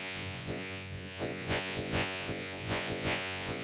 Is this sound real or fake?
fake